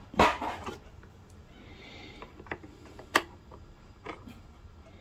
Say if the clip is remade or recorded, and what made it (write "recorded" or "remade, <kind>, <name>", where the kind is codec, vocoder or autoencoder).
recorded